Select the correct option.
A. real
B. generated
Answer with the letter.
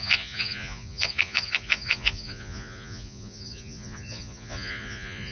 B